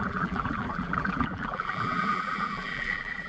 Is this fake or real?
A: fake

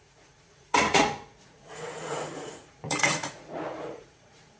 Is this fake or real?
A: fake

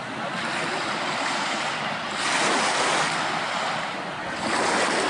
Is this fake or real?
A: real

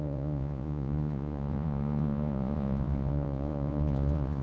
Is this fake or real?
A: fake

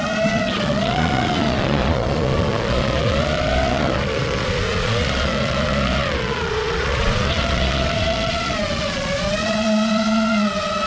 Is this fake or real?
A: fake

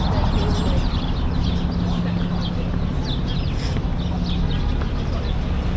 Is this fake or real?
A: real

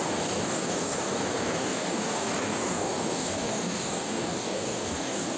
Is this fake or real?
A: fake